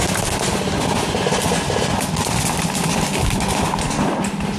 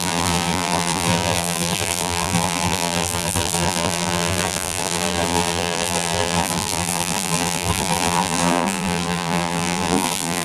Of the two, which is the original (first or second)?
first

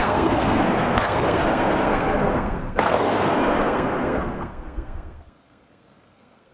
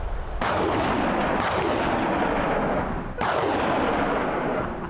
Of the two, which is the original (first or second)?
second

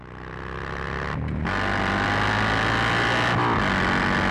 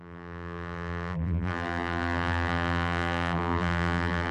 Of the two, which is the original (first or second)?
first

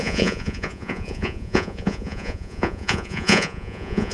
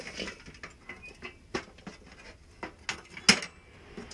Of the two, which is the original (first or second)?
second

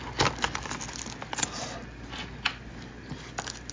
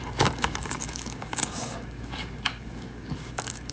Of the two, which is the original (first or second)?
first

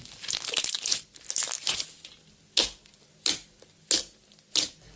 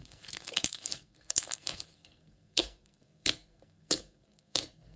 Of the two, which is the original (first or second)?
first